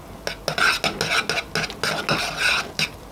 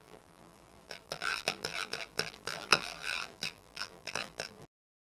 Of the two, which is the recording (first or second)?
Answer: first